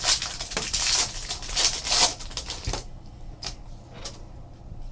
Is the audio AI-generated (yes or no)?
no